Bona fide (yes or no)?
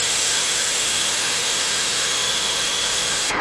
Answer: no